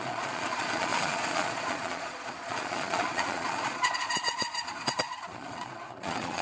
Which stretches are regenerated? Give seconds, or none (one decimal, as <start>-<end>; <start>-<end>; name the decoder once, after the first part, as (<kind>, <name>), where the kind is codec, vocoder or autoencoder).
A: 0.0-6.4 (vocoder, Vocos)